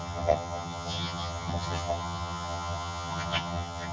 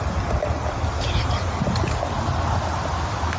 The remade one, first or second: first